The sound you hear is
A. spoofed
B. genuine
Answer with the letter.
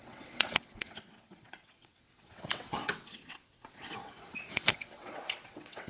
A